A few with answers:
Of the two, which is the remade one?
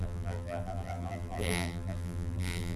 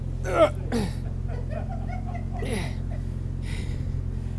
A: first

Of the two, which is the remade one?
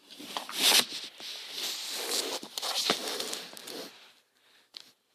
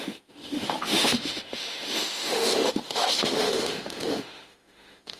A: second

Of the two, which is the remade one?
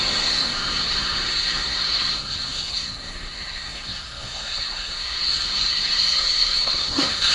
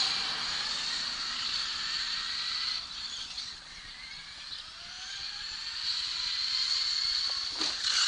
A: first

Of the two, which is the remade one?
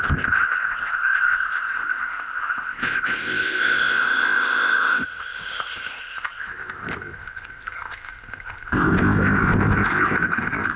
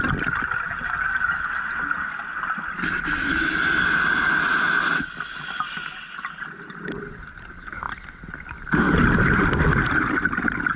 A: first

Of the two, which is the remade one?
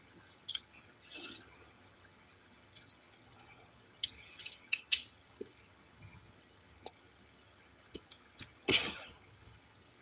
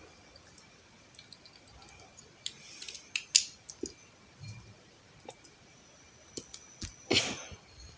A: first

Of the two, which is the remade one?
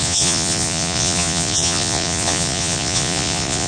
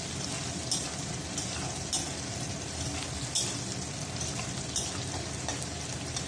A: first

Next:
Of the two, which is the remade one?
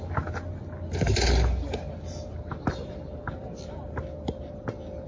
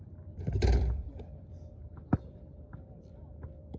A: second